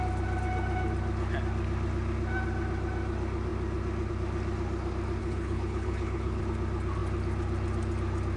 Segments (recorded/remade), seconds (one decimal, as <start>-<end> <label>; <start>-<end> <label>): 0.0-5.2 recorded; 5.2-6.4 remade; 6.4-8.4 recorded

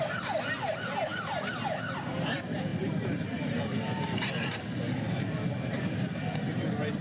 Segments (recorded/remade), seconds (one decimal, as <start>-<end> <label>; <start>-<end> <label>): 0.0-7.0 recorded

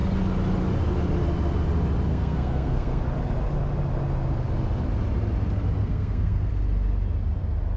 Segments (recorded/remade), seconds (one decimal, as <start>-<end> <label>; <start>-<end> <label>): 0.0-2.1 recorded; 2.1-3.0 remade; 3.0-5.8 recorded; 5.8-6.5 remade; 6.5-7.8 recorded

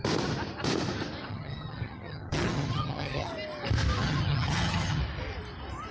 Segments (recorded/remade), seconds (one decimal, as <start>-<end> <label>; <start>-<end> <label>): 0.0-1.3 recorded; 1.3-3.3 remade; 3.3-4.0 recorded; 4.0-5.0 remade; 5.0-5.9 recorded

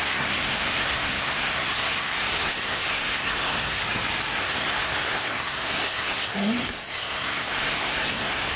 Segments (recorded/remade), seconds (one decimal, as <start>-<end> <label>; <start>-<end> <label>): 0.0-3.8 remade; 3.8-4.4 recorded; 4.4-8.6 remade

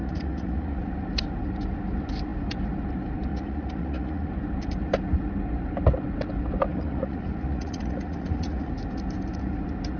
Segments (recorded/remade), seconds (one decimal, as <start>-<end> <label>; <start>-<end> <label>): 0.0-0.8 remade; 0.8-3.3 recorded; 3.3-4.3 remade; 4.3-6.7 recorded; 6.7-8.7 remade; 8.7-10.0 recorded

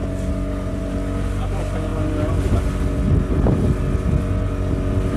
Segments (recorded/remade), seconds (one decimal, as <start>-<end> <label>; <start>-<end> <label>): 0.0-5.2 recorded

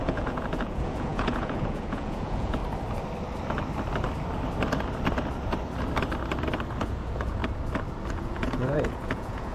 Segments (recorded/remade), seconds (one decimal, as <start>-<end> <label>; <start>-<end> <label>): 0.0-2.6 remade; 2.6-6.8 recorded; 6.8-7.4 remade; 7.4-8.1 recorded; 8.1-9.5 remade